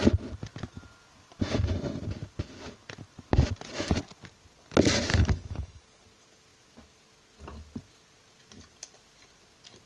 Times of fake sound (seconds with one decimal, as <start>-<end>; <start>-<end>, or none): 5.1-5.8